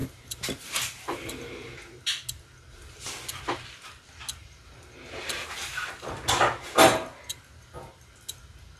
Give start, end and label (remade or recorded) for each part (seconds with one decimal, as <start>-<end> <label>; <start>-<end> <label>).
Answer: 0.0-1.3 remade; 1.3-4.4 recorded; 4.4-6.1 remade; 6.1-6.9 recorded; 6.9-8.1 remade; 8.1-8.8 recorded